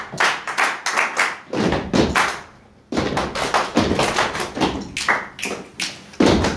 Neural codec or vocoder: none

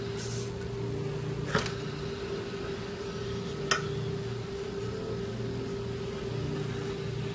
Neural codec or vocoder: none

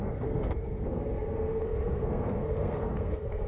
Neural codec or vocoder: codec, SNAC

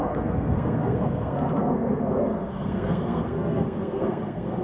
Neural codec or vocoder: codec, SNAC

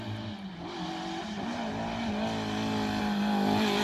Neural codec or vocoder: none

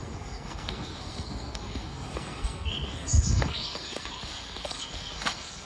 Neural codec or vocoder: codec, SNAC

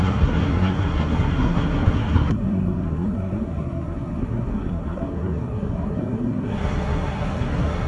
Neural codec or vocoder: codec, SNAC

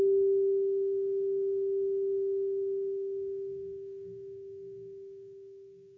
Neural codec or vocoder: codec, SNAC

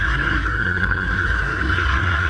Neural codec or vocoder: codec, SNAC